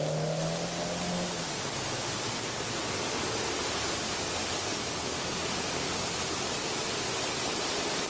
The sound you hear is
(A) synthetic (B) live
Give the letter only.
B